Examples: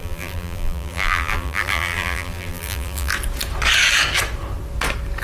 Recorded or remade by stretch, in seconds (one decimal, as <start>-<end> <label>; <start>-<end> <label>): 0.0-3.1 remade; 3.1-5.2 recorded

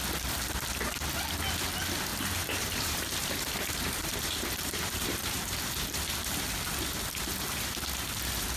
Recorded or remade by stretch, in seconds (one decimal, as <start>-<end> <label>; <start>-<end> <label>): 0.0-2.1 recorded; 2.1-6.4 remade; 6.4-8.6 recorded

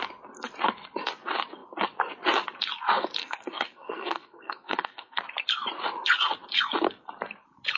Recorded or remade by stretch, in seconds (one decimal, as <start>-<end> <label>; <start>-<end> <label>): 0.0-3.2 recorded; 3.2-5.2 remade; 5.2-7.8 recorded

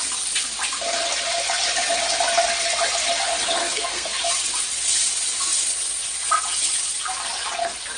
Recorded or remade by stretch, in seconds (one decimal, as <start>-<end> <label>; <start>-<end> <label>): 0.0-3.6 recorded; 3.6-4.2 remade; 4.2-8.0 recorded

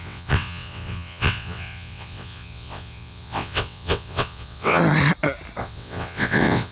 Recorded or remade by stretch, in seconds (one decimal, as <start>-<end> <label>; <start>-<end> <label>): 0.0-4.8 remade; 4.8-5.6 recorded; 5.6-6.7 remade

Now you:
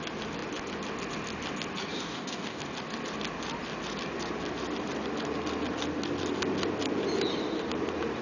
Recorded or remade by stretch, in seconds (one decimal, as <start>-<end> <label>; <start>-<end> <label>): 0.0-1.9 recorded; 1.9-2.6 remade; 2.6-8.2 recorded

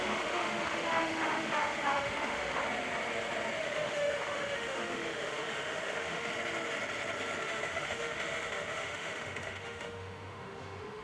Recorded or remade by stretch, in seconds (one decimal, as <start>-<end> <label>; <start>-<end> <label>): 0.0-2.6 remade; 2.6-3.6 recorded; 3.6-6.3 remade; 6.3-7.4 recorded; 7.4-11.0 remade